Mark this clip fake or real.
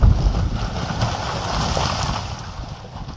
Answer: real